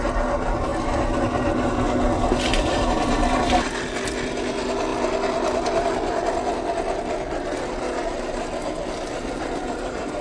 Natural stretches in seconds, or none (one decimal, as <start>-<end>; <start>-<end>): 0.0-2.5; 3.4-10.2